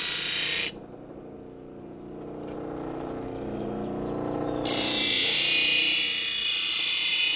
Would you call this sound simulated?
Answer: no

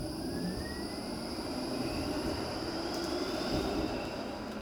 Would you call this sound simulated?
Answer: yes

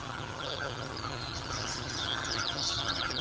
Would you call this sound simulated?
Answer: yes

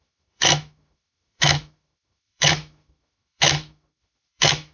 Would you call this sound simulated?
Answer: yes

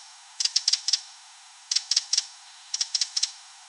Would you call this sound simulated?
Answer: yes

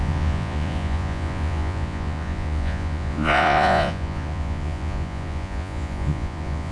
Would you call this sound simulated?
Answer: yes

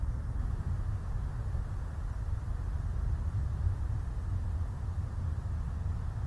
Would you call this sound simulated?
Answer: no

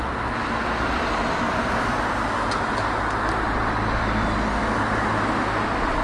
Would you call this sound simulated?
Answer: no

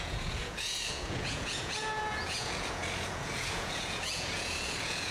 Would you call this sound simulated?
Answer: yes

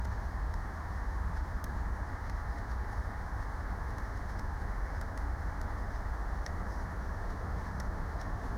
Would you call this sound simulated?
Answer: yes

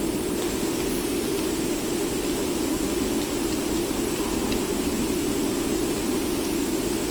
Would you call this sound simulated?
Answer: no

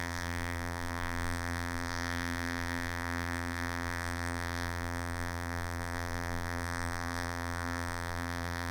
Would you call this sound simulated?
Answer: yes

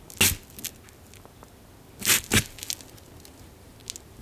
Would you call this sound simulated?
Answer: no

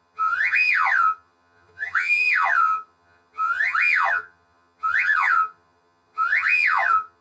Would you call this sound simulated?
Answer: yes